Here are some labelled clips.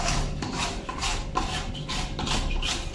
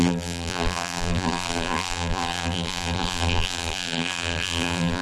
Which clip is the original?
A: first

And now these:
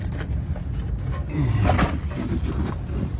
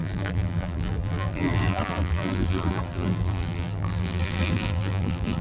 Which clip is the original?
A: first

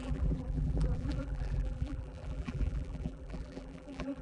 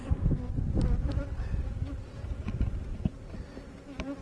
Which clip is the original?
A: second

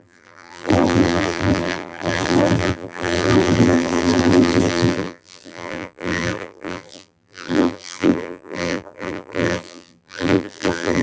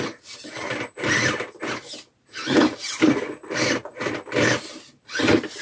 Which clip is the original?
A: second